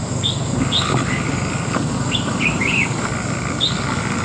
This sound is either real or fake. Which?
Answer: fake